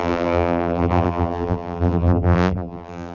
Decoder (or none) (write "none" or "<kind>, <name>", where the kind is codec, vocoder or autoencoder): vocoder, BigVGAN v2